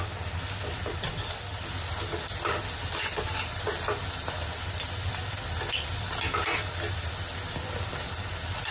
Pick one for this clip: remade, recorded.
recorded